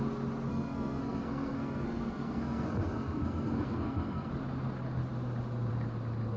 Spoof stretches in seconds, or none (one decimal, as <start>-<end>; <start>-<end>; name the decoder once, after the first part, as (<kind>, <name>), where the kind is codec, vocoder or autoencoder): 0.5-4.3 (codec, SNAC)